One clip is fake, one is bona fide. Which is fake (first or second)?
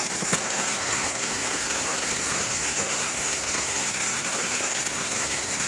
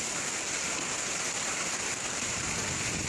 first